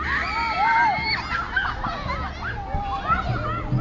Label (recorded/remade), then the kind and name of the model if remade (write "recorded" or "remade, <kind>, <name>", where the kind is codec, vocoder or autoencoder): recorded